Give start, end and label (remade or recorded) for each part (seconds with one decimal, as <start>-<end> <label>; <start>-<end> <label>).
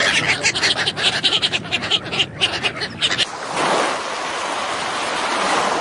0.0-0.7 recorded; 0.7-1.8 remade; 1.8-5.3 recorded; 5.3-5.8 remade